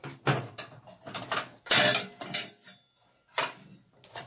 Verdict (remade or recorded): recorded